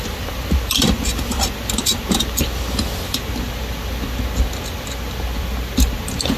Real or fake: real